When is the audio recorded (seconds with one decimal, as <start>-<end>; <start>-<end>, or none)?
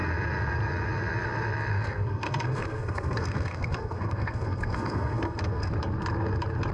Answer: 0.0-1.7; 5.7-6.7